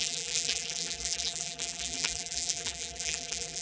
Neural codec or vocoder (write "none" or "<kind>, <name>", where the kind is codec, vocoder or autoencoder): vocoder, BigVGAN v2